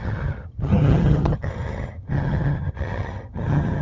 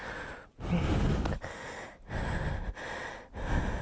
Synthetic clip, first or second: first